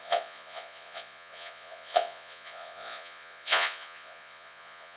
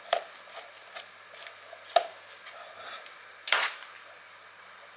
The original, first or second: second